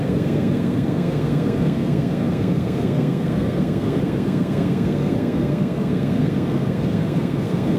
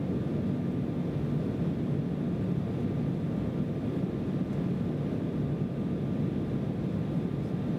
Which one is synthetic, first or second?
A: first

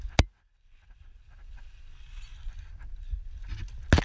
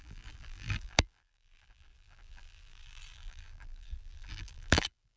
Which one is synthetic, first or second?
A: second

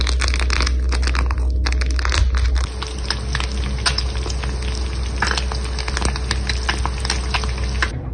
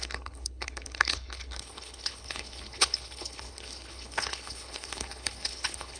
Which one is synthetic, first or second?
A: second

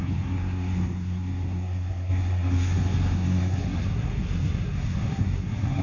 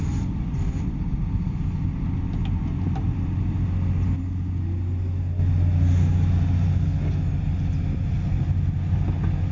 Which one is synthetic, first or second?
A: first